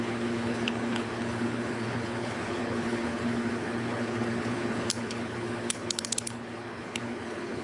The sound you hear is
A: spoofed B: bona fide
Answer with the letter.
A